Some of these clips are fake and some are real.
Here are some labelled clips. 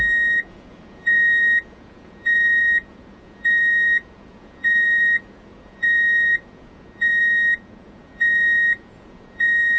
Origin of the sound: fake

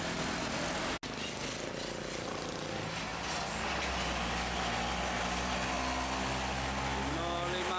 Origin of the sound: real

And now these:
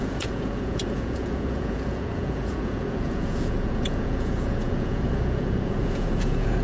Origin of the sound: fake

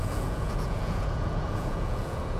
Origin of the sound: fake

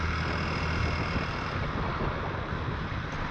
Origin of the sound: real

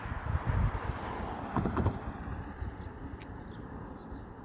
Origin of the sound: real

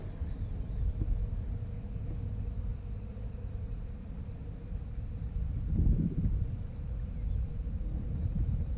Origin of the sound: real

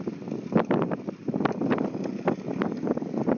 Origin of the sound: real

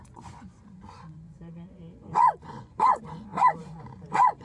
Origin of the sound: fake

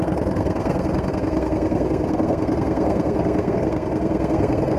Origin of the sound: fake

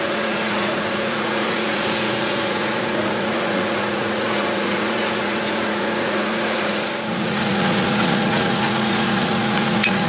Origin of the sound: fake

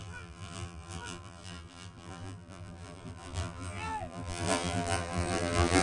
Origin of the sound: fake